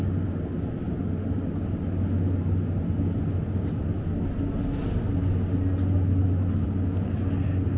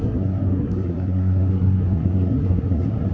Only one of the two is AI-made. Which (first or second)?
second